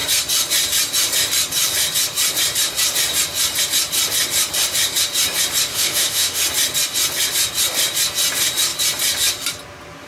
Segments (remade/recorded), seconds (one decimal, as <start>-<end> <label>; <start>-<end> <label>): 0.0-5.7 recorded; 5.7-6.4 remade; 6.4-10.1 recorded